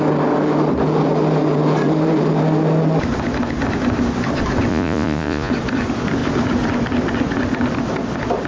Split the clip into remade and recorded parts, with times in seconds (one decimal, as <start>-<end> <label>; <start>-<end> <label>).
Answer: 0.0-4.7 recorded; 4.7-5.5 remade; 5.5-8.5 recorded